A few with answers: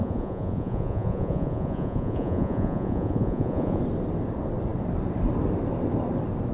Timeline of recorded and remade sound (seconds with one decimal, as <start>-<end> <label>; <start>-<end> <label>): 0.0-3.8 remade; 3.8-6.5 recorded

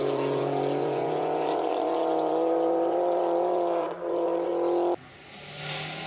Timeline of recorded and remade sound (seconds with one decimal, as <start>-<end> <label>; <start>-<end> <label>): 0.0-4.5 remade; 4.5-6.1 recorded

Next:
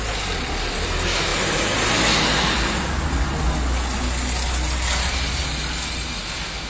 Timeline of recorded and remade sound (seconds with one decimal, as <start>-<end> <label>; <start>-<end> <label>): 0.0-6.7 recorded

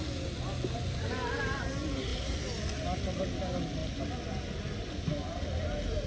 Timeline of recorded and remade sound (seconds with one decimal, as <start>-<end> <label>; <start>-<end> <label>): 0.0-6.1 recorded

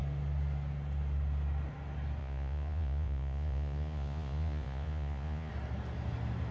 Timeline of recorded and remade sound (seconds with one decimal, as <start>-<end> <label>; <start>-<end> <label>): 0.0-2.2 recorded; 2.2-5.5 remade; 5.5-6.5 recorded

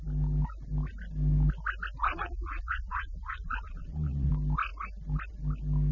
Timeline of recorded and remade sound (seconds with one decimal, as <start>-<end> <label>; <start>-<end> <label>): 0.0-2.0 recorded; 2.0-4.3 remade; 4.3-5.9 recorded